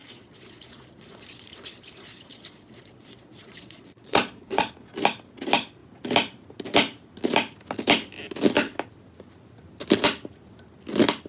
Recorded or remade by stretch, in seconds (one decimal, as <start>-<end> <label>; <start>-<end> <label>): 0.0-4.7 remade; 4.7-11.3 recorded